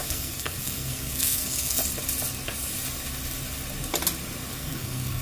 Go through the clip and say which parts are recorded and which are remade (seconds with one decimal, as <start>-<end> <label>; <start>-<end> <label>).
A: 0.0-1.8 remade; 1.8-4.5 recorded; 4.5-5.2 remade